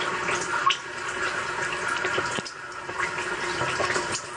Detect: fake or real real